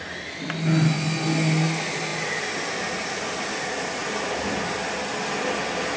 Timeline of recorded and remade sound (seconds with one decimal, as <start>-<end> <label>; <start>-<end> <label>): 0.0-6.0 recorded